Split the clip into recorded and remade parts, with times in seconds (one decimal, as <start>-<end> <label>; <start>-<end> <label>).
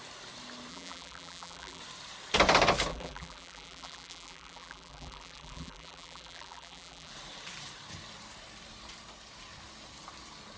0.0-0.7 recorded; 0.7-1.8 remade; 1.8-2.9 recorded; 2.9-7.1 remade; 7.1-10.6 recorded